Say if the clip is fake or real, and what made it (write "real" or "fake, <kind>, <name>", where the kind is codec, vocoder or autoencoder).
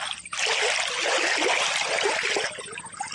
real